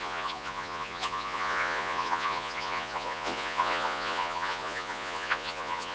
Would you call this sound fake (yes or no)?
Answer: yes